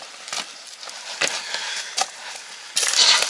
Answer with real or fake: real